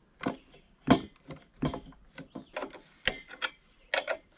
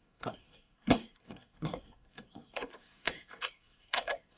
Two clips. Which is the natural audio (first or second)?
first